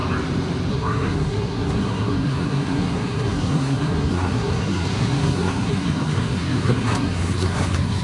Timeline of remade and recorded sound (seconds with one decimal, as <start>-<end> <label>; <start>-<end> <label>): 0.0-0.7 recorded; 0.7-8.0 remade